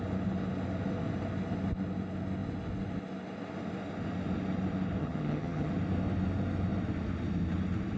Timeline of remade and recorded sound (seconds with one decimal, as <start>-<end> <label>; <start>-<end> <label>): 0.0-5.0 recorded; 5.0-5.7 remade; 5.7-8.0 recorded